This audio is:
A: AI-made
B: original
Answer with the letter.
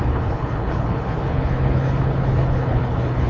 A